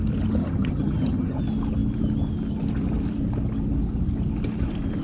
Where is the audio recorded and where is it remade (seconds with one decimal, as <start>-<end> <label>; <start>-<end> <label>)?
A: 0.0-0.4 recorded; 0.4-1.4 remade; 1.4-5.0 recorded